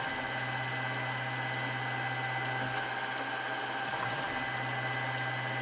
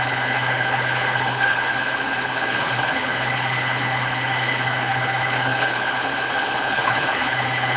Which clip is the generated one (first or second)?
second